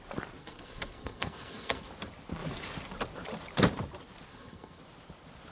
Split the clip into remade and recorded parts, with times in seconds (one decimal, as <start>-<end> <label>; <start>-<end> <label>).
0.0-0.4 recorded; 0.4-1.9 remade; 1.9-4.3 recorded; 4.3-4.8 remade; 4.8-5.5 recorded